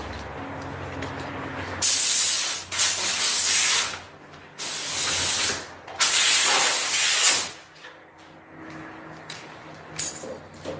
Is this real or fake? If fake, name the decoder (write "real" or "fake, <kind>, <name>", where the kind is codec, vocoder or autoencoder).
real